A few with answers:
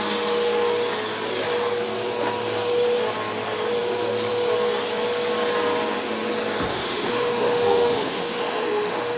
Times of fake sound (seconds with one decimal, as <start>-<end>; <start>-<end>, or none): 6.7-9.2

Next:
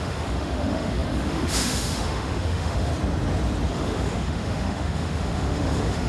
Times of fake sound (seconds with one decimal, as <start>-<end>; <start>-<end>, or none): 0.0-2.9; 3.7-6.1

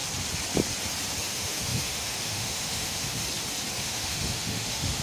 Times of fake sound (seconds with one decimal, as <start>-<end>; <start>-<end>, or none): 1.2-3.2; 3.8-5.0